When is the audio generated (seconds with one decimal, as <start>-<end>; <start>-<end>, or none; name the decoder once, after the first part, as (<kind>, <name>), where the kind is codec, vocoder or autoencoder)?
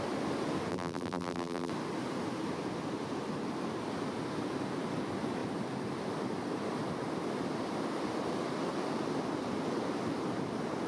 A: 0.7-1.7 (vocoder, BigVGAN v2)